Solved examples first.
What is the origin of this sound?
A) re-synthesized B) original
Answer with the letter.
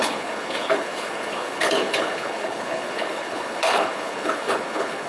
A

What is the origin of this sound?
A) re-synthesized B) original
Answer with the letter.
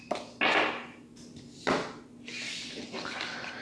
B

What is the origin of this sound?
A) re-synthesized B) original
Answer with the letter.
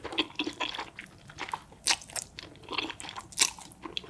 B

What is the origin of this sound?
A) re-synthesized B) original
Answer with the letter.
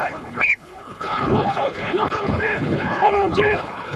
A